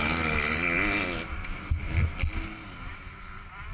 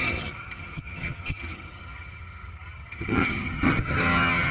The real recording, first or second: first